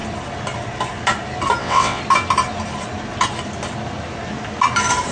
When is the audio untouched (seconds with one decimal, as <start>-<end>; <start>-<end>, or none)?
0.0-1.6; 2.0-5.1